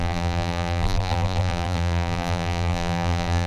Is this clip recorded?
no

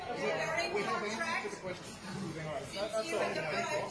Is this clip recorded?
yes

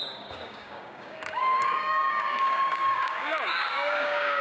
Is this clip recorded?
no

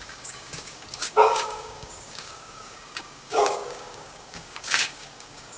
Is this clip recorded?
no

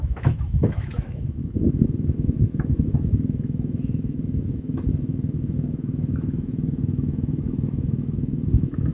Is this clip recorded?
no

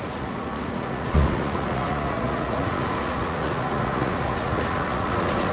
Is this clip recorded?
no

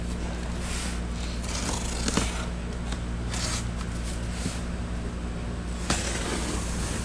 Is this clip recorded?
yes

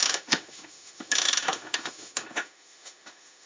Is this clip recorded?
no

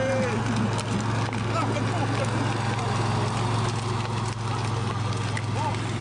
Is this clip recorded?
yes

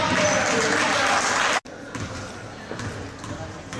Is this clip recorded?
yes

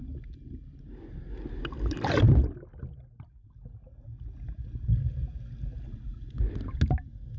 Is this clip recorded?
yes